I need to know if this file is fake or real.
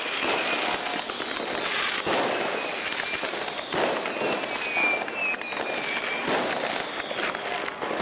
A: real